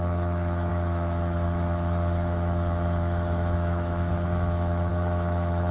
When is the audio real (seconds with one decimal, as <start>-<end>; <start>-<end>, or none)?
none